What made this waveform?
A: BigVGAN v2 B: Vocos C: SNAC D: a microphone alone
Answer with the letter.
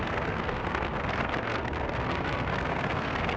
C